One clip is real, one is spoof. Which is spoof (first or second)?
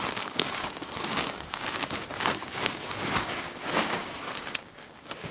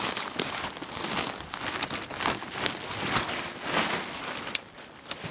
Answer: first